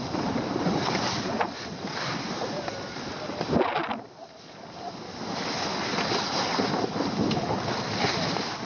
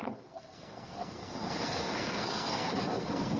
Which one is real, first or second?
first